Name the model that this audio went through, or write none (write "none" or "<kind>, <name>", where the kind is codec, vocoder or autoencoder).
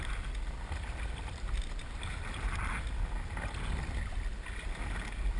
none